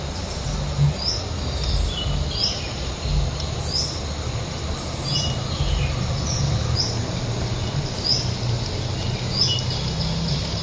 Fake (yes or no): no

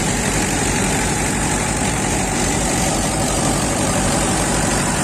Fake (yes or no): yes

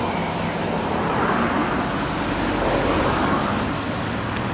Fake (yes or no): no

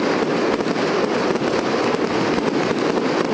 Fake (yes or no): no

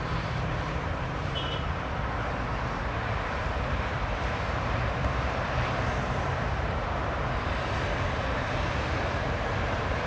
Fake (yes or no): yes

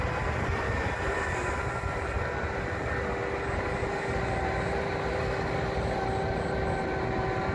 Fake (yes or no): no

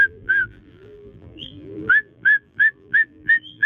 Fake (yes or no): yes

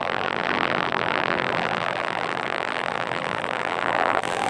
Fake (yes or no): yes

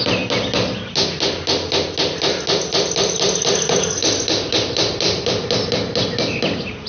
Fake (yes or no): no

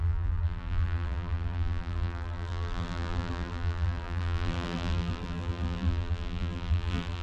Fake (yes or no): yes